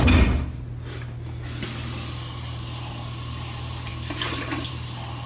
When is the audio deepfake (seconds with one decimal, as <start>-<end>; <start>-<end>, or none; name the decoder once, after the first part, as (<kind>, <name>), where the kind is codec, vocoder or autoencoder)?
none